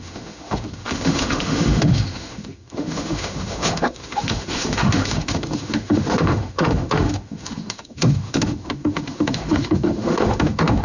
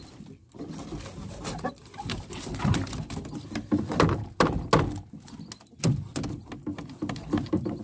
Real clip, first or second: second